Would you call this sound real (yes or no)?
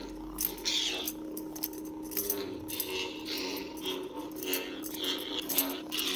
yes